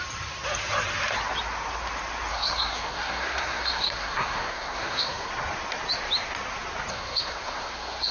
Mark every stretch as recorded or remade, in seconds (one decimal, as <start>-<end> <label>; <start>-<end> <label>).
0.0-2.3 recorded; 2.3-5.3 remade; 5.3-6.9 recorded; 6.9-8.1 remade